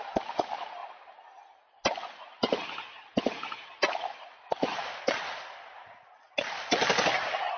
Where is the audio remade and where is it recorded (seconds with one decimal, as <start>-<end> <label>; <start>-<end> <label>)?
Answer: 0.0-7.6 recorded